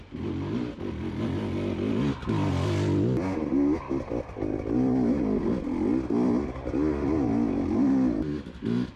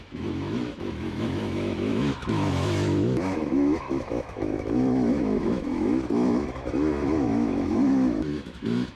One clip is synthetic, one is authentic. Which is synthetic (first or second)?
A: second